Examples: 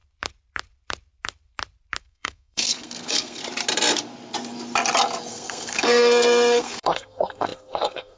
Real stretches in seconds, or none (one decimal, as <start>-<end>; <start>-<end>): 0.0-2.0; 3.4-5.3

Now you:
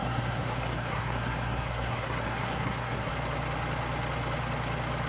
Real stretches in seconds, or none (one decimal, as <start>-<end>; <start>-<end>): 3.1-5.1

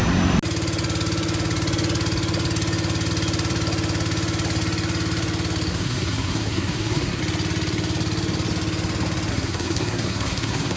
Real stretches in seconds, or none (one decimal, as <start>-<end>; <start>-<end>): 0.0-5.7; 7.2-9.3

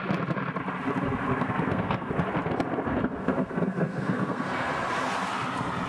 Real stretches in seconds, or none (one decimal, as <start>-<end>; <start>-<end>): 0.0-1.3; 2.1-3.0; 4.7-5.9

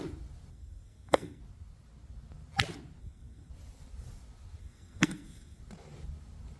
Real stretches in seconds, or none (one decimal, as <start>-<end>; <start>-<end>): 0.0-0.5; 1.4-3.0; 3.5-4.6; 5.6-6.6

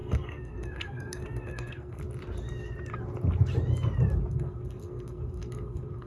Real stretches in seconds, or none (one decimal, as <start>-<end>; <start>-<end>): 2.0-4.3

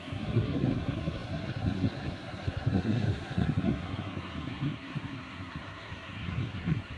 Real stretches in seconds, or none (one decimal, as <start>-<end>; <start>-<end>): none

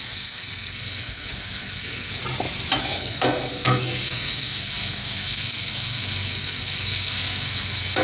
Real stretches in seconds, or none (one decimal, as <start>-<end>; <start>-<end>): 2.2-2.8